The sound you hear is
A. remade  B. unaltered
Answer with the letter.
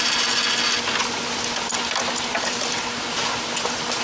B